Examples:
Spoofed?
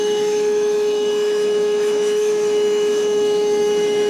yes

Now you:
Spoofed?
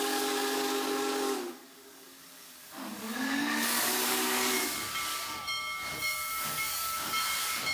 yes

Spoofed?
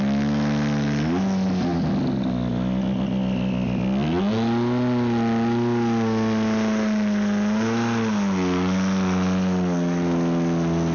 no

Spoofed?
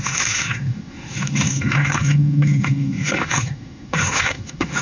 yes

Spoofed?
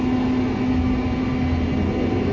no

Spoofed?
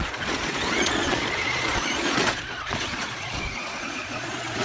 yes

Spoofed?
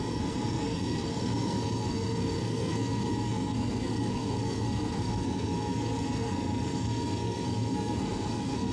yes